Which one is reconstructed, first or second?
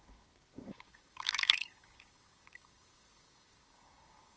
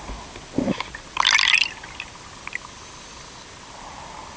first